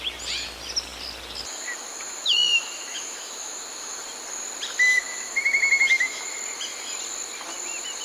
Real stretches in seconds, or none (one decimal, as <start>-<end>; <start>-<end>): 0.0-1.9; 4.0-5.0; 6.3-8.0